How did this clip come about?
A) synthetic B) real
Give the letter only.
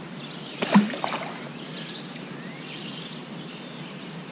B